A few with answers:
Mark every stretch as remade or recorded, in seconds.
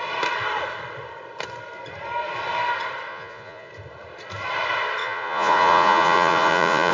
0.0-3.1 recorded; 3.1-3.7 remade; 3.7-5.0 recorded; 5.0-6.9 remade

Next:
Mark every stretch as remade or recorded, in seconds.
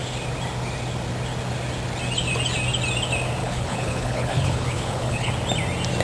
0.0-3.4 recorded; 3.4-5.3 remade; 5.3-6.0 recorded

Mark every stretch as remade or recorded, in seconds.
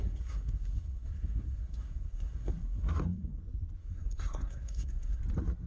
0.0-3.4 remade; 3.4-3.8 recorded; 3.8-5.2 remade; 5.2-5.7 recorded